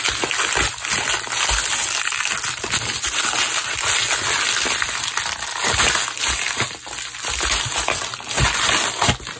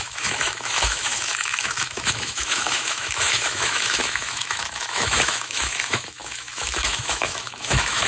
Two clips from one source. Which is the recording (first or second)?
first